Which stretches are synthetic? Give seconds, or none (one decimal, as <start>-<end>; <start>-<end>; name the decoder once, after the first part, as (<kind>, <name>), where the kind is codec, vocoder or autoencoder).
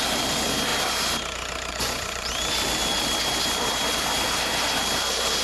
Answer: 1.7-2.3 (vocoder, Vocos)